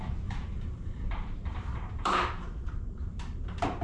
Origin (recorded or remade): remade